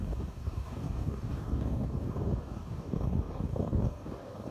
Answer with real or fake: fake